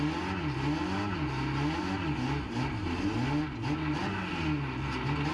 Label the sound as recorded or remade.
recorded